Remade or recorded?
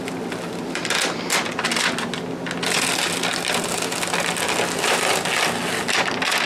recorded